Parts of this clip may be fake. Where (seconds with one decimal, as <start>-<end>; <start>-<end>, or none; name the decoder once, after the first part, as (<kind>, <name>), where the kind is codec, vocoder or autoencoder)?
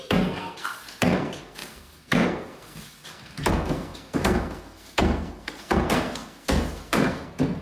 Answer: 0.0-7.6 (codec, SNAC)